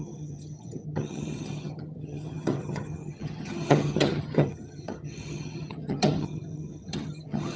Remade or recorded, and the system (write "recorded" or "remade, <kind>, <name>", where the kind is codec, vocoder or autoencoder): remade, vocoder, HiFi-GAN